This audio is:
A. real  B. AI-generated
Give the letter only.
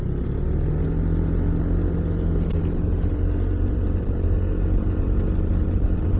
A